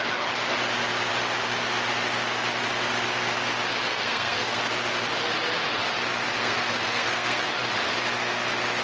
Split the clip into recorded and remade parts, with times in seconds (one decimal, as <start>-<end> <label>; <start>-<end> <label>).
0.0-3.9 recorded; 3.9-4.6 remade; 4.6-6.4 recorded; 6.4-7.5 remade; 7.5-8.8 recorded